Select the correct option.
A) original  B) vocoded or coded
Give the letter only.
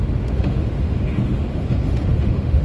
B